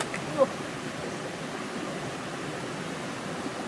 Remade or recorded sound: recorded